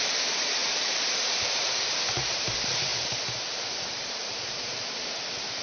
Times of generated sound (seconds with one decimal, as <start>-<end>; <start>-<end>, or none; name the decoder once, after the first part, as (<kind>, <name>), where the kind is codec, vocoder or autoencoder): 0.0-5.6 (vocoder, BigVGAN v2)